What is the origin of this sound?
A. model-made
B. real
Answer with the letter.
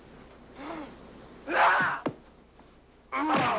B